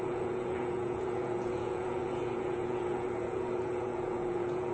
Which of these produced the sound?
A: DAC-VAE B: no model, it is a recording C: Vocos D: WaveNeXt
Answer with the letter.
C